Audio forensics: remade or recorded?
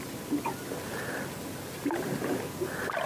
recorded